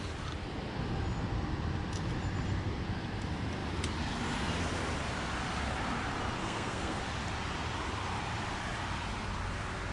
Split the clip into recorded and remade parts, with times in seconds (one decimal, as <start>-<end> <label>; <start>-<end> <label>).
0.0-6.4 recorded; 6.4-7.0 remade; 7.0-9.9 recorded